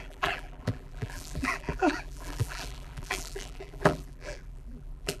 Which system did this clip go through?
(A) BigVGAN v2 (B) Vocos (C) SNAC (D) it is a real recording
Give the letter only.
A